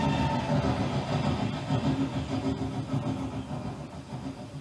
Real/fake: real